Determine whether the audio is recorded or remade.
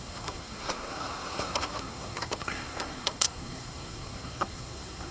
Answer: remade